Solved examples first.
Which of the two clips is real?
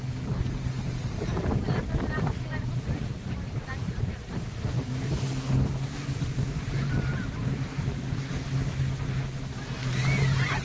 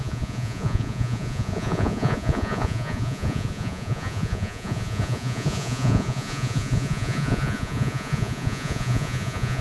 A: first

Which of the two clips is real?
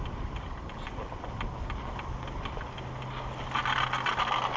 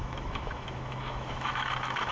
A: first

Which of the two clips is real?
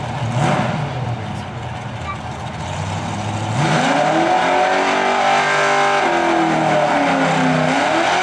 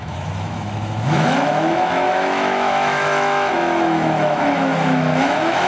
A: first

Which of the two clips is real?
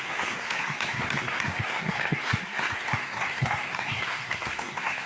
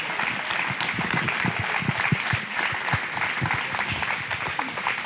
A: second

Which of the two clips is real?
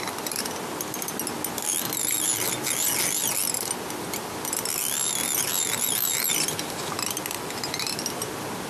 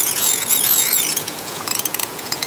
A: first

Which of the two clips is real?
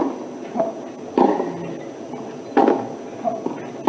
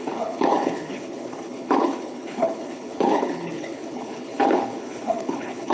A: first